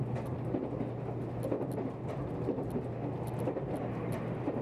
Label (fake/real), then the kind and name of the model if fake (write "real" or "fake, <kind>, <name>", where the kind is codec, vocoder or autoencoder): real